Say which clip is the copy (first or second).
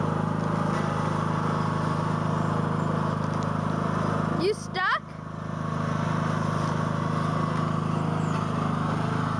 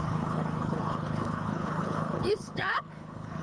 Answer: second